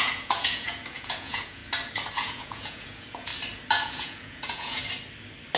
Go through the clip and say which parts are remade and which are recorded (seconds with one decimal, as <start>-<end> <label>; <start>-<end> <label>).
0.0-1.6 remade; 1.6-2.1 recorded; 2.1-3.3 remade; 3.3-3.9 recorded; 3.9-4.8 remade; 4.8-5.6 recorded